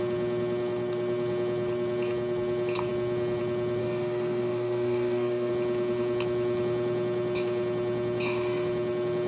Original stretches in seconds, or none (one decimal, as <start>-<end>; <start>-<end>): 0.0-3.8; 5.5-9.3